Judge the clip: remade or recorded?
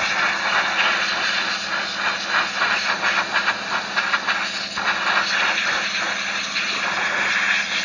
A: recorded